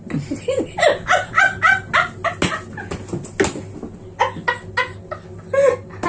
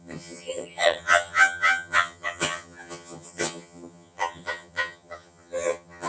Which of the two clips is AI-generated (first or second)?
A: second